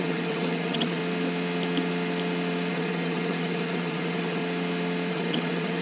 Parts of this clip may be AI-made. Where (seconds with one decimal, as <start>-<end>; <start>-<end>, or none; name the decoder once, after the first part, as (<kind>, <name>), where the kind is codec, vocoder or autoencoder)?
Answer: 0.0-1.0 (vocoder, HiFi-GAN); 2.7-4.4; 5.1-5.8